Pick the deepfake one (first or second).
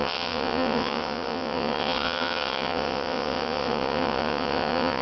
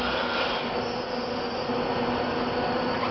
first